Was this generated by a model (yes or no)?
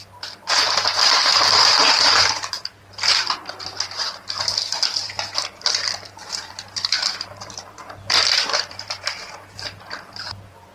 yes